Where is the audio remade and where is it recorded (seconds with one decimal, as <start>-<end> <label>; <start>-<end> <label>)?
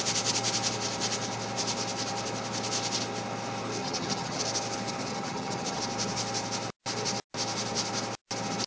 0.0-3.8 recorded; 3.8-4.4 remade; 4.4-5.1 recorded; 5.1-5.8 remade; 5.8-8.7 recorded